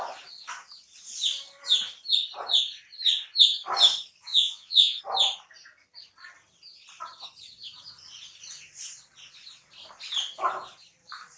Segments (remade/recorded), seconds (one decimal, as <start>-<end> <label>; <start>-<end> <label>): 0.0-4.3 recorded; 4.3-5.0 remade; 5.0-11.4 recorded